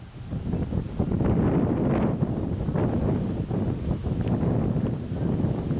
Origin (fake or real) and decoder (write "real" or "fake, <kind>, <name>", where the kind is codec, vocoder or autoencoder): real